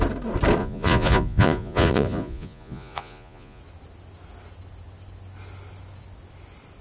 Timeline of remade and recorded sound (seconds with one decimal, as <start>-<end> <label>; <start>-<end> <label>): 0.0-0.6 recorded; 0.6-3.6 remade; 3.6-6.8 recorded